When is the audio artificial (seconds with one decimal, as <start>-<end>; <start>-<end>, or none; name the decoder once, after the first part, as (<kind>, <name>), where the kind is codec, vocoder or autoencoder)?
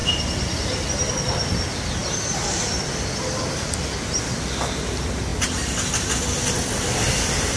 0.0-1.1 (vocoder, BigVGAN v2); 2.0-2.6